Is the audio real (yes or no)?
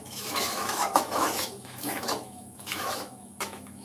no